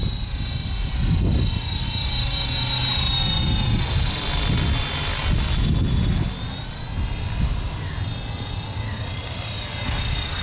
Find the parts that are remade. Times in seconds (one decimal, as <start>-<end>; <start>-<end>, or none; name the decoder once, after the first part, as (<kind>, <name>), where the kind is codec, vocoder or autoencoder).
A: none